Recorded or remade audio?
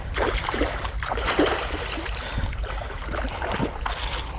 remade